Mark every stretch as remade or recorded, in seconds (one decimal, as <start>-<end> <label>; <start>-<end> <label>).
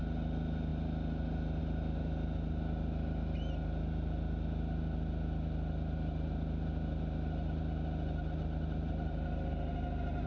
0.0-10.3 recorded